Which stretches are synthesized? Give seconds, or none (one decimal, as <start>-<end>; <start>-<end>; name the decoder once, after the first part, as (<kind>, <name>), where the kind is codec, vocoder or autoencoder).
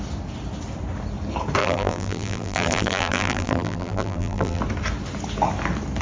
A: 1.6-4.6 (vocoder, BigVGAN v2)